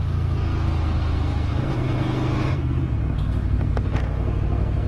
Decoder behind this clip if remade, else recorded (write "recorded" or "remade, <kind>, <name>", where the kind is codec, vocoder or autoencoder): remade, codec, SNAC